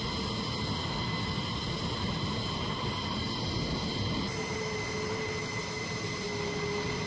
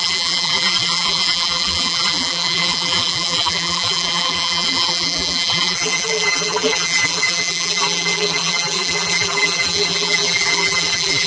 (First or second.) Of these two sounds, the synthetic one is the second